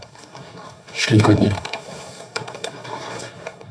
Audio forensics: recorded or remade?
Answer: remade